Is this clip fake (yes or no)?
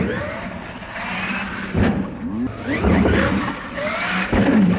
no